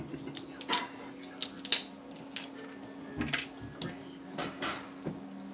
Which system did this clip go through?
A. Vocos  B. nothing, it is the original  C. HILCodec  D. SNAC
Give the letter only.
B